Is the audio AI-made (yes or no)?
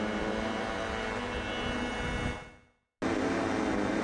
no